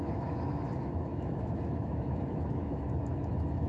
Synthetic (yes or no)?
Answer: yes